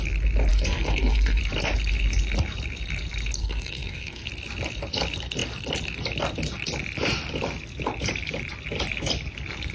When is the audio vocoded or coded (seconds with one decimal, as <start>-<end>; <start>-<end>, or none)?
0.5-1.4; 3.4-4.3